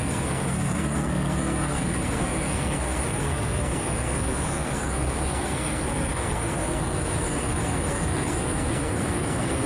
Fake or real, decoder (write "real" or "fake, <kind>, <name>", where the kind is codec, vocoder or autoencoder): fake, codec, SNAC